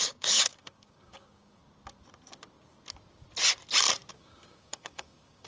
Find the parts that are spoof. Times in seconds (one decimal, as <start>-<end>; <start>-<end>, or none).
0.0-1.6; 4.1-5.5